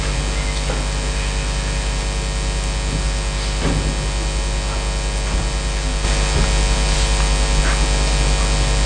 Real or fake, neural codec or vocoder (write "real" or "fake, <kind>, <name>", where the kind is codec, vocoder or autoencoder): real